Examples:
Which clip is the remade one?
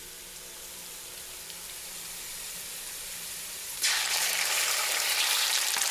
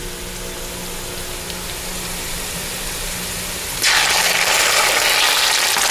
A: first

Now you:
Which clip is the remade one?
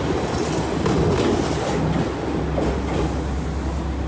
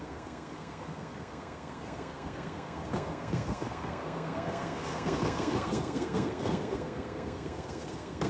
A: second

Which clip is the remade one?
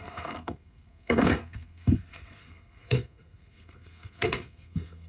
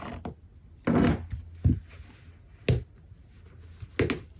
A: first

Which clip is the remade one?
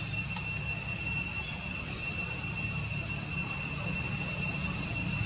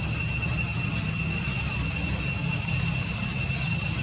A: second